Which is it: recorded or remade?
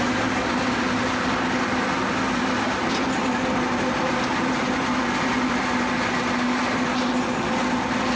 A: recorded